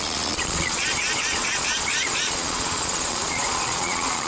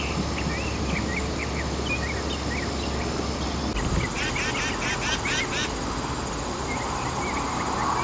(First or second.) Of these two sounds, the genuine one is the second